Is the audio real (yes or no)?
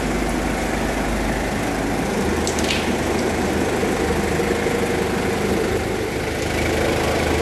yes